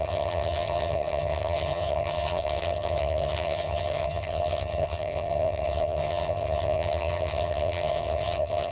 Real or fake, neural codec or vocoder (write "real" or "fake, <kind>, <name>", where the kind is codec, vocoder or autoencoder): fake, vocoder, HiFi-GAN